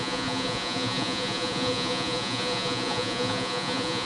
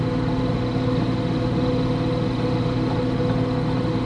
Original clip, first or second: second